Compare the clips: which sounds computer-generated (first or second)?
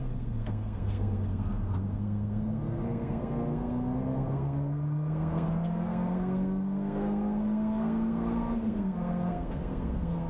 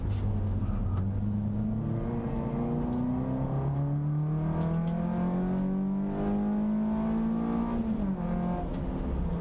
first